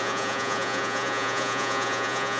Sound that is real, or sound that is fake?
fake